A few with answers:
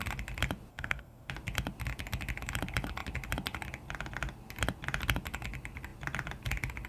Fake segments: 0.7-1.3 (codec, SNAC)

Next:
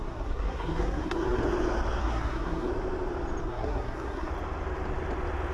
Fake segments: 0.0-1.4 (codec, SNAC); 2.0-2.7; 3.4-4.3

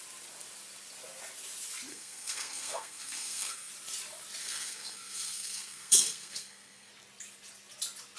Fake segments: 1.9-3.7 (codec, SNAC); 4.4-6.9

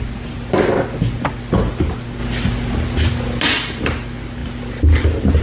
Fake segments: none

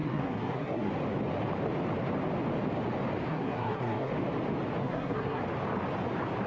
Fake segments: 0.0-0.9 (codec, SNAC); 3.3-4.1; 4.8-5.4

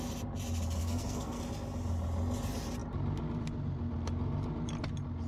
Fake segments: 0.8-1.4 (codec, SNAC)

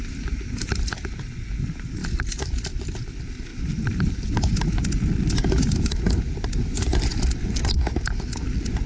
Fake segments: none